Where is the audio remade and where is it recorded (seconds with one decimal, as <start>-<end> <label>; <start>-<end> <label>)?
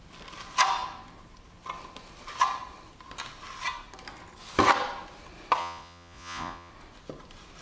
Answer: 0.0-5.6 recorded; 5.6-6.7 remade; 6.7-7.6 recorded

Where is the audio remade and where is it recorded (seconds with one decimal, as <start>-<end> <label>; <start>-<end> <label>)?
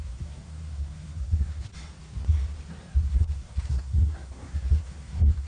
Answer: 0.0-1.7 remade; 1.7-3.1 recorded; 3.1-5.5 remade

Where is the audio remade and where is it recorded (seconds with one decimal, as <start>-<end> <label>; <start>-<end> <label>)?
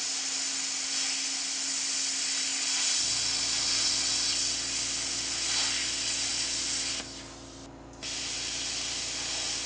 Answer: 0.0-9.7 recorded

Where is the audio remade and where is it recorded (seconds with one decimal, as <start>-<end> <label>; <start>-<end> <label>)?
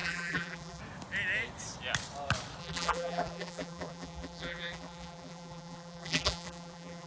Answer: 0.0-0.8 remade; 0.8-2.6 recorded; 2.6-7.1 remade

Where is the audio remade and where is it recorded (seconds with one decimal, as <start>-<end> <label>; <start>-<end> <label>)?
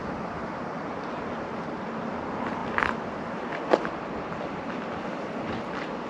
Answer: 0.0-0.7 remade; 0.7-6.1 recorded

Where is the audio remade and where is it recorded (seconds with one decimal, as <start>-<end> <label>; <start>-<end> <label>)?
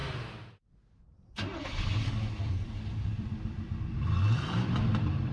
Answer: 0.0-2.4 recorded; 2.4-5.3 remade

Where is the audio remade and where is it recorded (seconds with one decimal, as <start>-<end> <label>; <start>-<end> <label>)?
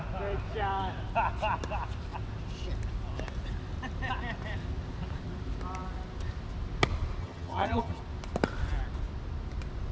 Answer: 0.0-7.2 recorded; 7.2-8.0 remade; 8.0-9.9 recorded